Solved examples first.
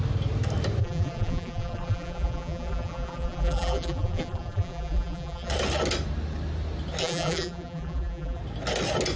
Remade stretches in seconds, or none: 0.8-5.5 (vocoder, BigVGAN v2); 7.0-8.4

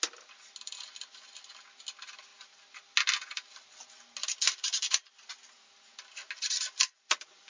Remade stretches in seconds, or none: none

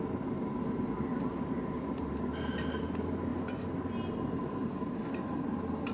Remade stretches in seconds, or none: none

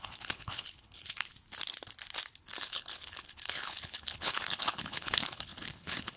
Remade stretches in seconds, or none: 0.0-1.3 (codec, HILCodec); 2.6-6.2

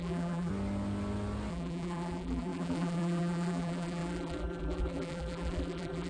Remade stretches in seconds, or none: 0.0-0.5 (vocoder, BigVGAN v2); 1.5-6.1

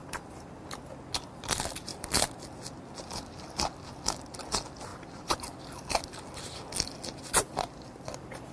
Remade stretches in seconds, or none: none